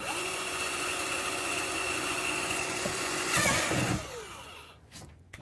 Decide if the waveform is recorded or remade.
remade